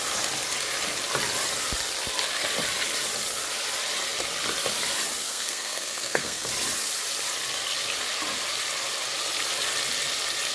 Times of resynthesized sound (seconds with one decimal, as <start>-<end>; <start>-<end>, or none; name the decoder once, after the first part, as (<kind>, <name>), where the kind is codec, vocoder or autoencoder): 5.2-6.5 (codec, SNAC)